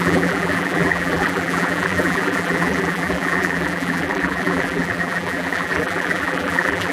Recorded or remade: remade